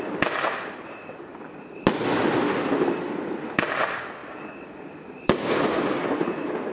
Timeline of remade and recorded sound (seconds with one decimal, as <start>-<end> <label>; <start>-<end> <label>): 0.0-6.7 recorded